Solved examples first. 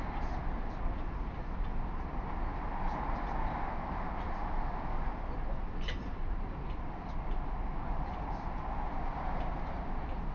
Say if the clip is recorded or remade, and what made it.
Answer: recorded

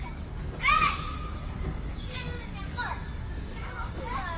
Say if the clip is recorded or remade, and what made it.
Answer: remade, codec, DAC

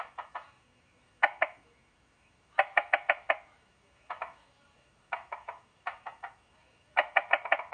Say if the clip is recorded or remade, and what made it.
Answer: remade, autoencoder, DAC-VAE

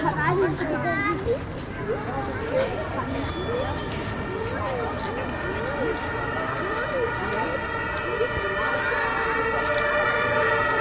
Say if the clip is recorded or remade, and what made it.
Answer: recorded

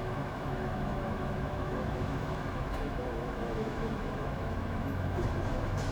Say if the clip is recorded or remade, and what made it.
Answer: remade, autoencoder, DAC-VAE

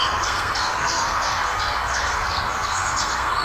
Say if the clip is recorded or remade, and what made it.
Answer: remade, codec, SNAC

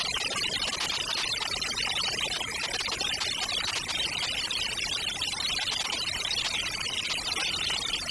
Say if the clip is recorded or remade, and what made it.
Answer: recorded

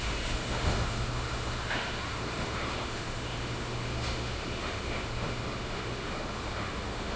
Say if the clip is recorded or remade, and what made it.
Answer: remade, autoencoder, DAC-VAE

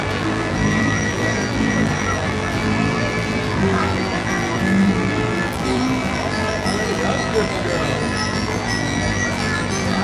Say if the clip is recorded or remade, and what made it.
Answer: remade, vocoder, BigVGAN v2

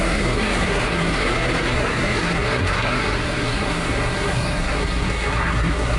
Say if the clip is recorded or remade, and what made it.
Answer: remade, codec, SNAC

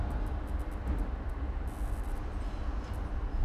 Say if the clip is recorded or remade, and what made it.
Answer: recorded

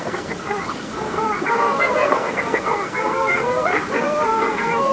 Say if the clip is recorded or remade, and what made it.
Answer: remade, codec, SNAC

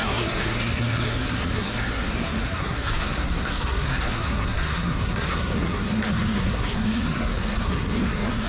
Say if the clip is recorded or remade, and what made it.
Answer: remade, codec, SNAC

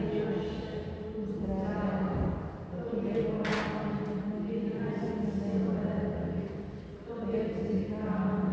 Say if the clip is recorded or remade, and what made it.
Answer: recorded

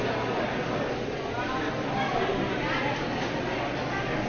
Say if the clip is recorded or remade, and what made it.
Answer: recorded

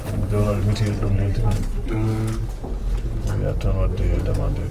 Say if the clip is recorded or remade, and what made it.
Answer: recorded